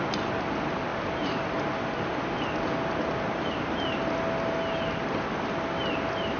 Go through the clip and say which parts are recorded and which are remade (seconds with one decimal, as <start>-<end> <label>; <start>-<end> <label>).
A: 0.0-6.4 recorded